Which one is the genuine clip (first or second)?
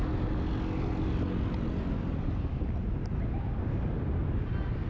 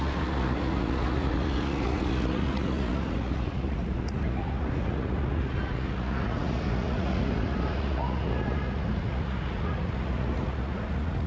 first